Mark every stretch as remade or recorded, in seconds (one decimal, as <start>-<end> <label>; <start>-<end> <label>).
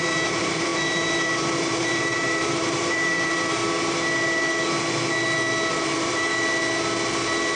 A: 0.0-3.6 remade; 3.6-5.7 recorded; 5.7-6.3 remade; 6.3-7.6 recorded